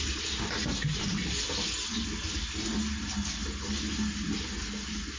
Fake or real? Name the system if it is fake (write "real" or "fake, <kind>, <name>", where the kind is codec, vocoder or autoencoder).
real